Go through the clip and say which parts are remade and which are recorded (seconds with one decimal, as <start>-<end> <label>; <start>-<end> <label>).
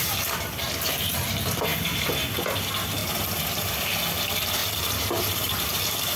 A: 0.0-3.0 recorded; 3.0-3.7 remade; 3.7-4.6 recorded; 4.6-6.2 remade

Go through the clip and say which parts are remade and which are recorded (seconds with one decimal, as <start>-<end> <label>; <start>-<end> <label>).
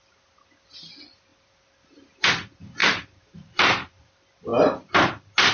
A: 0.0-2.8 recorded; 2.8-4.1 remade; 4.1-5.5 recorded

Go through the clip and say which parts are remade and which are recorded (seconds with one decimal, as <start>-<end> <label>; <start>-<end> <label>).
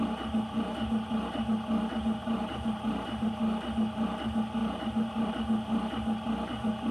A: 0.0-2.2 recorded; 2.2-3.4 remade; 3.4-4.6 recorded; 4.6-5.3 remade; 5.3-6.9 recorded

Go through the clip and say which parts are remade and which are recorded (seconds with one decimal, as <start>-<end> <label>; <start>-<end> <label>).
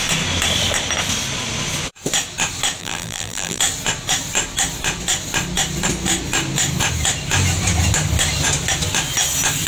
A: 0.0-2.8 recorded; 2.8-3.6 remade; 3.6-9.7 recorded